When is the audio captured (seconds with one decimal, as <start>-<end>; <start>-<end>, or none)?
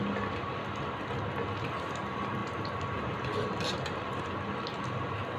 0.0-5.4